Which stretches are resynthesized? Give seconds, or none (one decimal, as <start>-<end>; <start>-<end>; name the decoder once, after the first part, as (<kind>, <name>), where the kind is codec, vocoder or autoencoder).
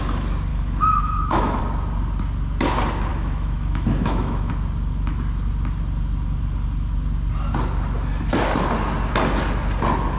0.5-1.6 (autoencoder, DAC-VAE); 3.1-4.5